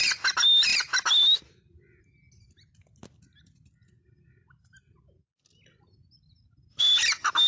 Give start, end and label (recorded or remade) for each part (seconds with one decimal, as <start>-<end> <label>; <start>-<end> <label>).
0.0-7.5 recorded